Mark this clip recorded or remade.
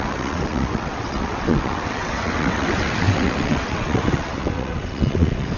remade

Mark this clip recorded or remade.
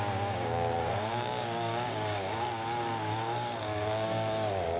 remade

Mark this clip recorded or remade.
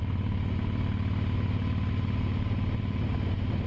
recorded